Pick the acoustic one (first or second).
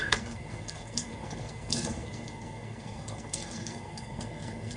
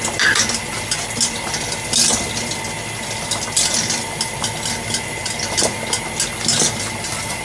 second